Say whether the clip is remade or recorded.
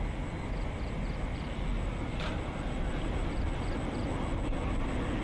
recorded